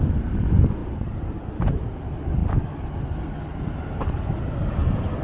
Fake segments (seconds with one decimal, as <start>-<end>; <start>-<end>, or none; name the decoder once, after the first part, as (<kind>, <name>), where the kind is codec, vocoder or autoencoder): none